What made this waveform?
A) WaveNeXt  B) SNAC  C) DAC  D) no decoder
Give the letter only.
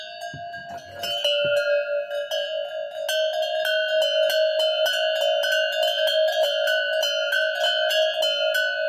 D